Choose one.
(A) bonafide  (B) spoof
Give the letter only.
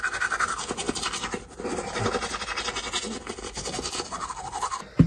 A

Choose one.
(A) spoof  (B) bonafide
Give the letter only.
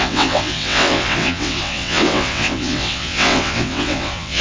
A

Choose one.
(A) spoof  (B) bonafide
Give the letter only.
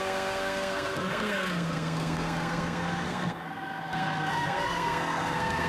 A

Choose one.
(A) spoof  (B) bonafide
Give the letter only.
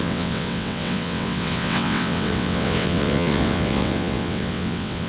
A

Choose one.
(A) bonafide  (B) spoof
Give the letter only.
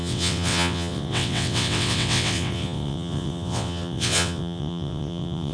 B